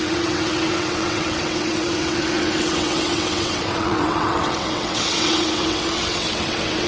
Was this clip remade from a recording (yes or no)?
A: yes